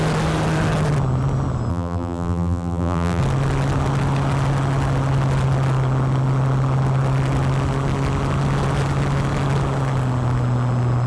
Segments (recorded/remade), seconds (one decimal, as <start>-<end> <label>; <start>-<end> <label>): 0.0-1.7 recorded; 1.7-3.2 remade; 3.2-11.1 recorded